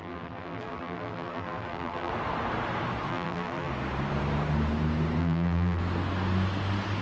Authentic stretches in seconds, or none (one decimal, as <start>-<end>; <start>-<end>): 2.1-3.1; 3.7-5.2; 5.8-7.0